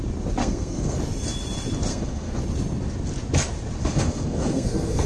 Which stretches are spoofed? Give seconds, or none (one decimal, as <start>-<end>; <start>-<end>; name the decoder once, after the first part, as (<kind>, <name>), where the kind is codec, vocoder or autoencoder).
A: 0.4-1.0 (codec, SNAC); 1.9-2.4; 3.8-5.1